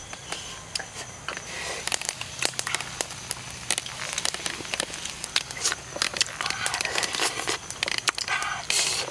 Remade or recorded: recorded